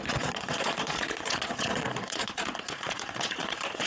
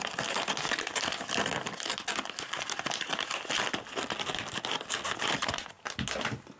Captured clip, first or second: second